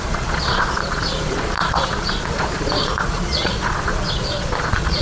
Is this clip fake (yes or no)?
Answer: yes